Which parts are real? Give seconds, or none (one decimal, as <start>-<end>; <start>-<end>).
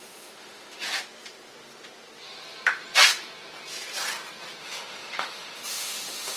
0.9-4.6